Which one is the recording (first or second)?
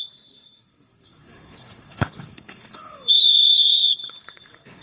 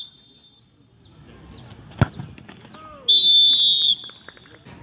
second